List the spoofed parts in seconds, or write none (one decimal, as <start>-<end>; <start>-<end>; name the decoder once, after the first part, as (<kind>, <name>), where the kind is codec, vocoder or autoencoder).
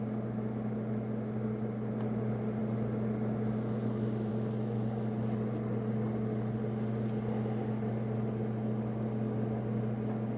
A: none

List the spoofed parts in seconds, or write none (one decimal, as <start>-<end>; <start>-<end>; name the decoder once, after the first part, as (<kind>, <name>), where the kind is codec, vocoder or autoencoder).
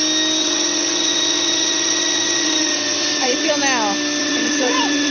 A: 0.4-3.5 (vocoder, WaveNeXt); 4.2-5.1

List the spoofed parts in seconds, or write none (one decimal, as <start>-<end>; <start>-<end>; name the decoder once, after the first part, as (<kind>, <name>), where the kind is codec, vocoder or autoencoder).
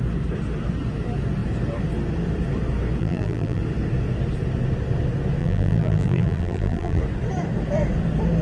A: 3.0-3.6 (vocoder, BigVGAN v2); 5.4-7.0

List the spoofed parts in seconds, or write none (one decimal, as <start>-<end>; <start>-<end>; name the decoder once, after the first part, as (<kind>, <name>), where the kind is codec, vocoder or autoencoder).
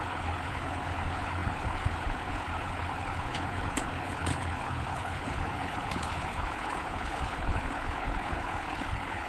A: 0.0-9.3 (codec, HILCodec)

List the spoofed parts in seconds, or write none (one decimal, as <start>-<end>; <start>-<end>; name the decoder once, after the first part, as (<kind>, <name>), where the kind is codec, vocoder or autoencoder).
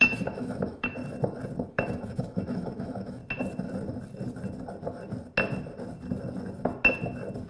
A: 0.0-1.0 (autoencoder, DAC-VAE); 1.7-3.2